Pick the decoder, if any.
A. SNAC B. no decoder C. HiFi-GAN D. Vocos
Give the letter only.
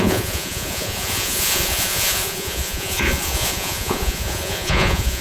D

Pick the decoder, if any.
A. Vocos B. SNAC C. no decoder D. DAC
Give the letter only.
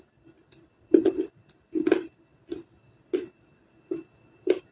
C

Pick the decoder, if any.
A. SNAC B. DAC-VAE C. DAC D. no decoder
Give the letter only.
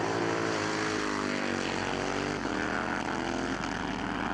D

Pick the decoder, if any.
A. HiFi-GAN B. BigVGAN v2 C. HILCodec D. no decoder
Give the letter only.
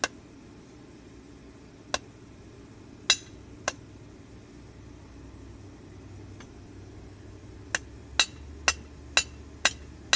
D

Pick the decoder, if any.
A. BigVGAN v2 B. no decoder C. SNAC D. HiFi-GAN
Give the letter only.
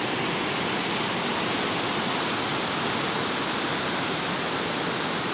B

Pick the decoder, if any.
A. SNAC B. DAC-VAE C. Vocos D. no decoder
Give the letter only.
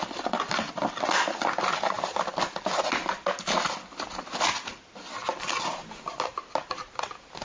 D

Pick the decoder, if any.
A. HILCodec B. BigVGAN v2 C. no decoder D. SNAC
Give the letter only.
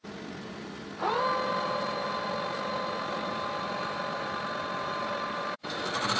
C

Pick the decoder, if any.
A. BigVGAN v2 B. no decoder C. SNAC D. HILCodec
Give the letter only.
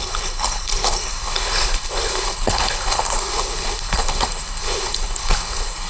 D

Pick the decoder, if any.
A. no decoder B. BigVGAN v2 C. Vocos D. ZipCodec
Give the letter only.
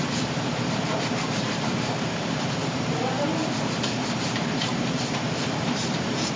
B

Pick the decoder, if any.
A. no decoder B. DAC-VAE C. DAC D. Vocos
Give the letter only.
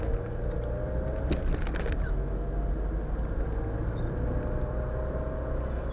A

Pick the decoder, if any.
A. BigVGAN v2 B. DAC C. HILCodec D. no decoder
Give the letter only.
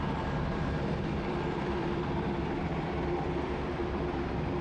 A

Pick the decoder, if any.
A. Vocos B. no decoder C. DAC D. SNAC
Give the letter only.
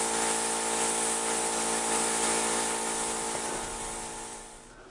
B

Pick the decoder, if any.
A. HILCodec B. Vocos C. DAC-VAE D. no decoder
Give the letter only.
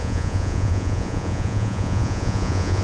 B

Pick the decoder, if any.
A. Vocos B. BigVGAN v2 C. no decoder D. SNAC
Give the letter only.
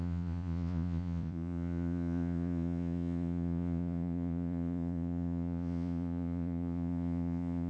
A